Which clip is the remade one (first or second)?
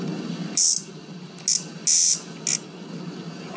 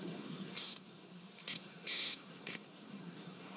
second